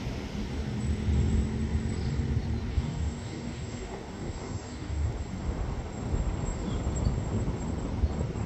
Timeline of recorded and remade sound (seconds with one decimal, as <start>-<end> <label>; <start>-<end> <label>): 0.0-2.7 recorded; 2.7-5.1 remade; 5.1-8.5 recorded